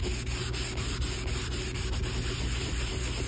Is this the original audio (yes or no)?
yes